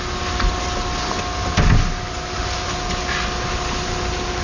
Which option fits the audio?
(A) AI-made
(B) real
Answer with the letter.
B